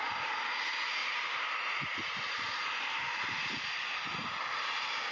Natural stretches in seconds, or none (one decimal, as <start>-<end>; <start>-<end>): 0.0-5.1